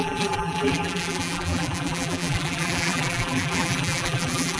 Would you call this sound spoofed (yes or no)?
yes